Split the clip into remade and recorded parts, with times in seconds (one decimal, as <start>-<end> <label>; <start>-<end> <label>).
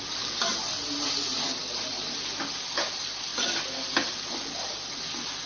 0.0-5.5 recorded